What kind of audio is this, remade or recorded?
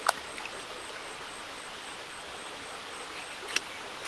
recorded